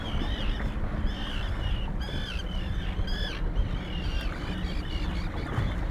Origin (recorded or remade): recorded